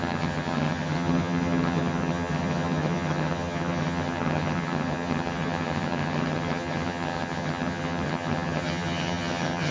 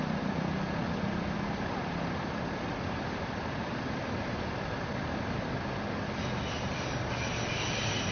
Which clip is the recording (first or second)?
second